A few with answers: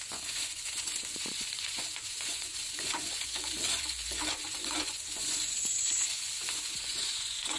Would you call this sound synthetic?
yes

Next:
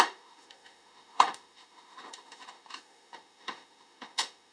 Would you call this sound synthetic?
yes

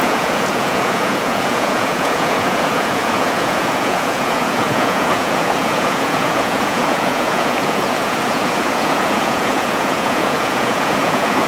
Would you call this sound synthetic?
yes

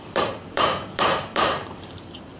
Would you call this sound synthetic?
yes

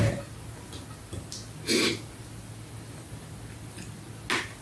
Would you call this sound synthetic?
no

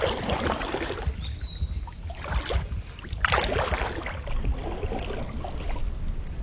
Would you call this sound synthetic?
yes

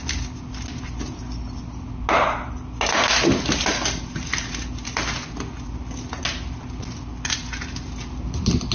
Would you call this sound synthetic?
no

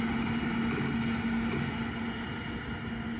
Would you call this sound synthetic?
no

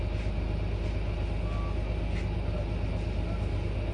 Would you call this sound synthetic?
no